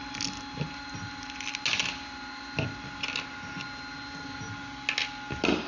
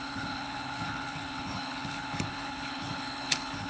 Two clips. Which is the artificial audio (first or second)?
second